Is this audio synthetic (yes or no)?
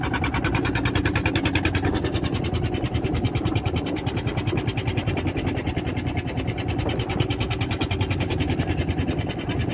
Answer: no